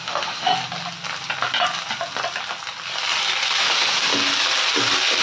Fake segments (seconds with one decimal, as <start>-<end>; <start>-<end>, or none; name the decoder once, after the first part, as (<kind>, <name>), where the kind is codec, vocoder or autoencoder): 0.0-0.5 (autoencoder, DAC-VAE); 3.6-4.1